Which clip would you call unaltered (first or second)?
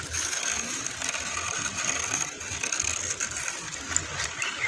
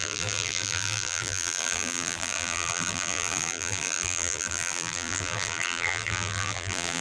first